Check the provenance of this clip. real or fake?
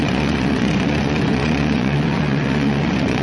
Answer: fake